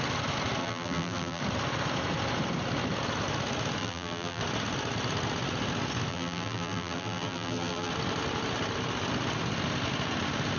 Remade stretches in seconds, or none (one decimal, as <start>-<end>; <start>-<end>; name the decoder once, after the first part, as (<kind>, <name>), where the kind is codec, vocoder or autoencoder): 0.6-1.4 (vocoder, BigVGAN v2); 3.8-4.4; 6.1-7.9